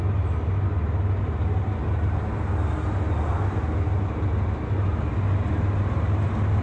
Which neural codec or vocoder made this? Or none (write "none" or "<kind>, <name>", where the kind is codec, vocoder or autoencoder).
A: none